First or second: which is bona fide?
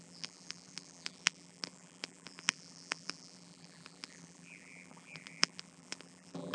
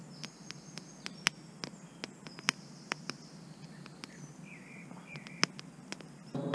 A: second